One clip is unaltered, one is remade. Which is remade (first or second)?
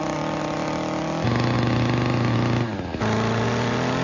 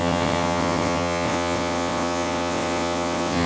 second